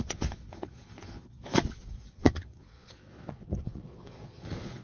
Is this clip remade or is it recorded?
remade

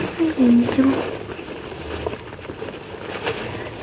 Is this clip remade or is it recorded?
recorded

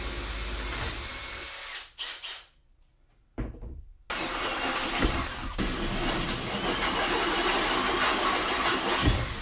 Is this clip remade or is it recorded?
recorded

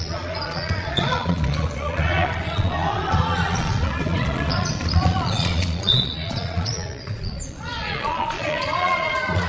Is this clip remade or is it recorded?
remade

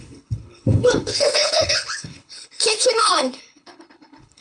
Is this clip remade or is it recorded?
remade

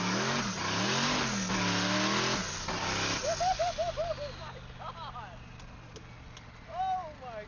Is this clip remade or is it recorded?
recorded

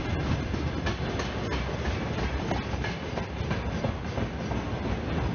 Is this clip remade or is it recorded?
recorded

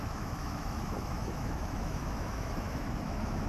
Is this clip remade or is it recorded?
remade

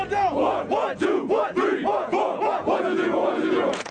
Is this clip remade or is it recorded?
remade